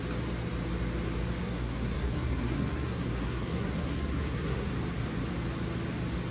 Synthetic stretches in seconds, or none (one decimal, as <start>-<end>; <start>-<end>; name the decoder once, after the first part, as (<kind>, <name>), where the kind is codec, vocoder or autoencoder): 1.4-4.7 (codec, SNAC)